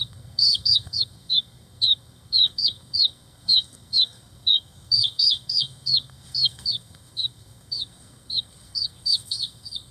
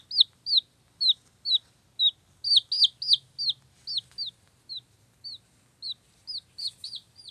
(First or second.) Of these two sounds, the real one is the second